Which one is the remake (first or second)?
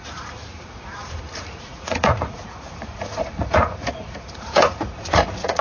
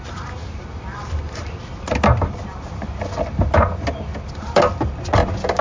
first